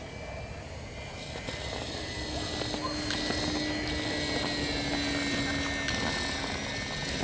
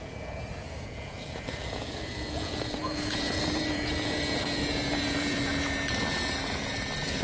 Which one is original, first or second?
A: first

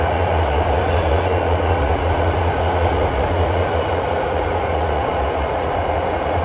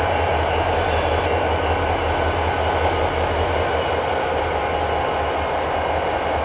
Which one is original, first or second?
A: second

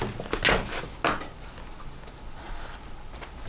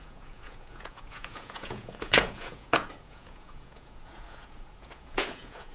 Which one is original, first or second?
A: first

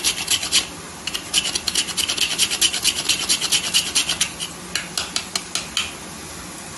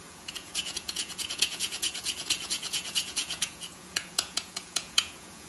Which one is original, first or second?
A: first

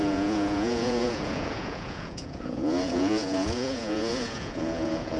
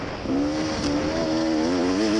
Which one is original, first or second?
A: second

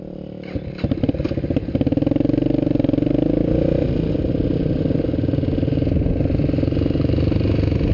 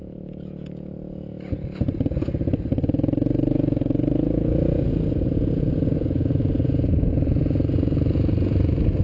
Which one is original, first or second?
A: first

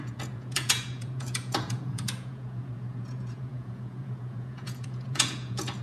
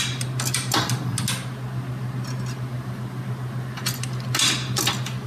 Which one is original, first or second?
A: second